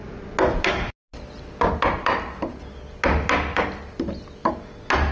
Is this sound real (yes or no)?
yes